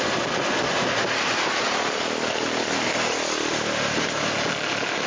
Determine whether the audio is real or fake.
real